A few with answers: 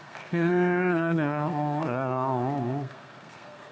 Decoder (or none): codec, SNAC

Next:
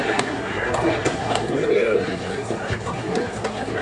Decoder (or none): codec, SNAC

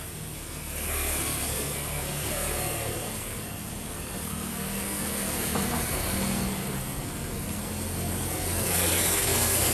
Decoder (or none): codec, SNAC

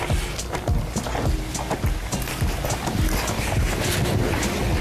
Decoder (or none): none